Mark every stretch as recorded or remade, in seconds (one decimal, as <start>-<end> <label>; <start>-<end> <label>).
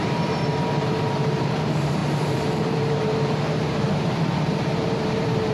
0.0-5.5 remade